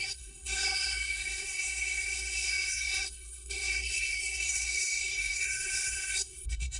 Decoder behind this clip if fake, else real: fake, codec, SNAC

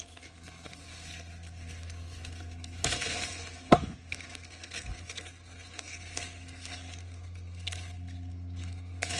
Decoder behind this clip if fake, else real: fake, codec, SNAC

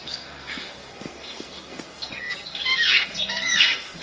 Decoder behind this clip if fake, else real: fake, codec, SNAC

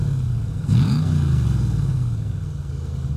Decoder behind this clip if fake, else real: fake, codec, SNAC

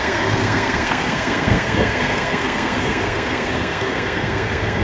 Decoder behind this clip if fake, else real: fake, codec, SNAC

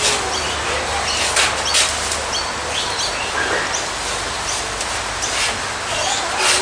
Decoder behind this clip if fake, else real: real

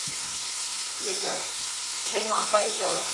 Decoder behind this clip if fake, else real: fake, codec, SNAC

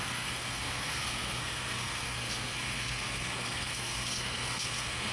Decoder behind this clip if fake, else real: fake, codec, SNAC